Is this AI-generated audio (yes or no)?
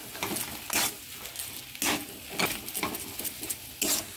no